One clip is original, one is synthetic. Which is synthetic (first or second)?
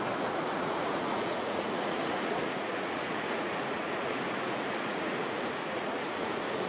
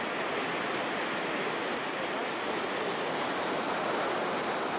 first